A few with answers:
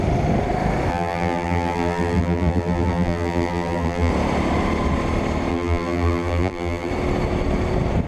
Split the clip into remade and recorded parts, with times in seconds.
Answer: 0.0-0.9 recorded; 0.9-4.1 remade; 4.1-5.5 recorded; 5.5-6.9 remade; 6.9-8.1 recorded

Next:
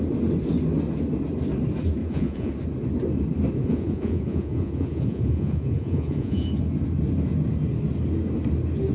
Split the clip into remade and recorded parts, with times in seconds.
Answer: 0.0-2.0 recorded; 2.0-2.5 remade; 2.5-3.6 recorded; 3.6-6.5 remade; 6.5-8.9 recorded

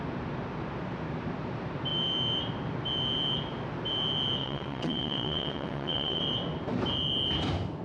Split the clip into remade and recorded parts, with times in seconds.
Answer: 0.0-4.4 recorded; 4.4-6.2 remade; 6.2-7.8 recorded

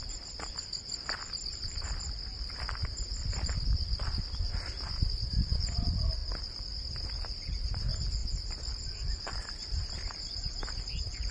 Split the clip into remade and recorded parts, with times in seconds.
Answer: 0.0-11.3 remade

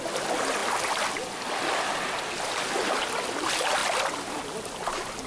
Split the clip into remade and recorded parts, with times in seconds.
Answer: 0.0-5.3 recorded